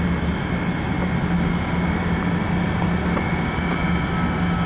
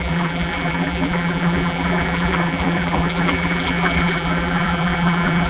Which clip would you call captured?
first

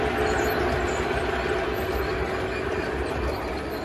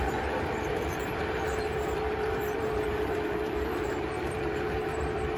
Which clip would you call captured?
first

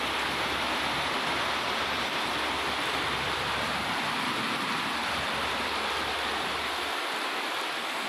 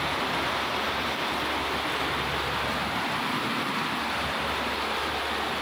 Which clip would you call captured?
second